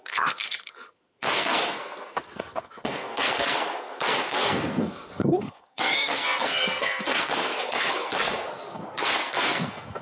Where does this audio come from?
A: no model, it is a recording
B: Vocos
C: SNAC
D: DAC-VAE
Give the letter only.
C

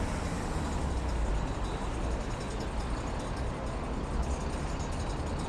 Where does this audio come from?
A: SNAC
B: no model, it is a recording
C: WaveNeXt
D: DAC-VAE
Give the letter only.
B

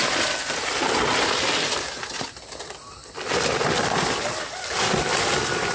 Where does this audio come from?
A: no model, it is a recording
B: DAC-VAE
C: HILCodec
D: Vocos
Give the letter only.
A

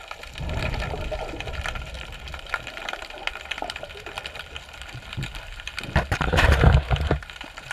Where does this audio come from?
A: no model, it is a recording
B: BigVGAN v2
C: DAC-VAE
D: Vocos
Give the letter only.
B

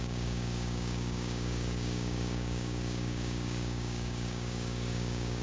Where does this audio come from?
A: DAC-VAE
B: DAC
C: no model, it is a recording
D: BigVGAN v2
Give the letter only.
B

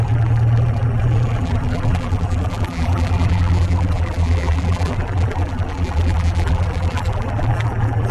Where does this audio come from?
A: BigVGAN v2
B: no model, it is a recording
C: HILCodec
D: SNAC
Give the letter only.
A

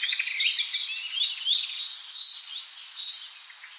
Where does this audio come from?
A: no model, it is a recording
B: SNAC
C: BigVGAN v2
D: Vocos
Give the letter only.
A